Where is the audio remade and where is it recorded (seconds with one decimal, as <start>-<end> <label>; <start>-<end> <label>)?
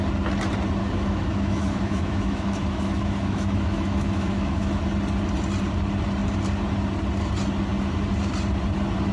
0.0-0.8 recorded; 0.8-4.8 remade; 4.8-9.1 recorded